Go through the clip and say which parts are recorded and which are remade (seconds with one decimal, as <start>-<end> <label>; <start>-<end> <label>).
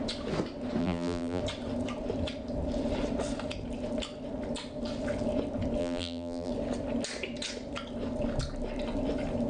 0.0-0.8 recorded; 0.8-1.4 remade; 1.4-5.8 recorded; 5.8-6.5 remade; 6.5-9.5 recorded